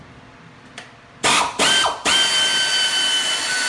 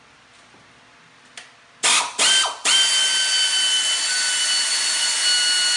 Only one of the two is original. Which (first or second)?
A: second